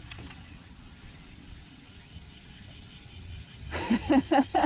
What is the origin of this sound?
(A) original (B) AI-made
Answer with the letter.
B